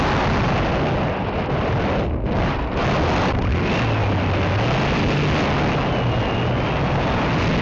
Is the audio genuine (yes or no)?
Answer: yes